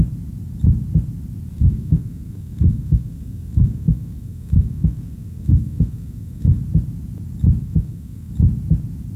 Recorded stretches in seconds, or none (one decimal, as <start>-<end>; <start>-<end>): 0.0-1.5; 6.6-7.6; 8.3-9.2